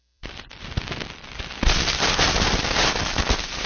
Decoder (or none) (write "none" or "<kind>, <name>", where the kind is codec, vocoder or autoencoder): vocoder, BigVGAN v2